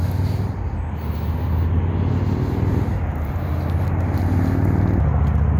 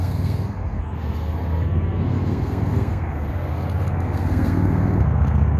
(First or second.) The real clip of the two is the first